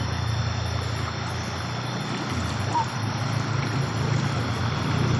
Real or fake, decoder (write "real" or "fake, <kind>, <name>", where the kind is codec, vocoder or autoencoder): real